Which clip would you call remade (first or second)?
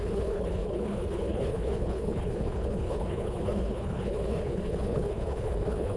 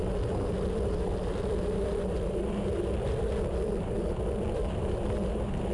first